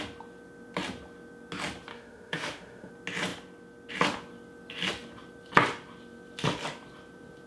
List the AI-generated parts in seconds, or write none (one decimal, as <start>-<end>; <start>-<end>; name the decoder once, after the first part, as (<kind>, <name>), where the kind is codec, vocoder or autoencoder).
1.9-2.9 (autoencoder, DAC-VAE)